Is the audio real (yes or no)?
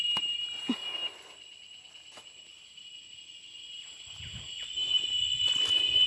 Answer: yes